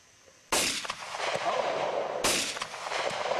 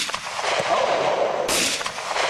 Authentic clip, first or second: first